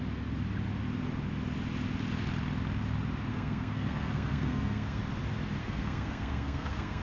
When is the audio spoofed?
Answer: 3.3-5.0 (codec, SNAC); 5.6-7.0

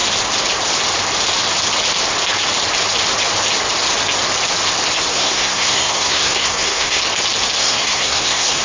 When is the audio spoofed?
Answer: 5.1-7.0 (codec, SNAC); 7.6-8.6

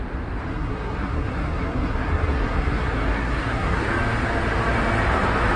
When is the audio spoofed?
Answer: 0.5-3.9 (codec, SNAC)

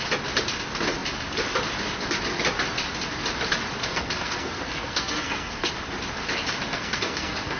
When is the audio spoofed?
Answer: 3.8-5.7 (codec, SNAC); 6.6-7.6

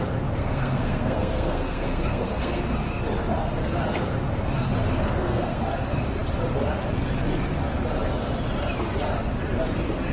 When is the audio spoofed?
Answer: 0.4-2.6 (codec, SNAC); 5.0-5.6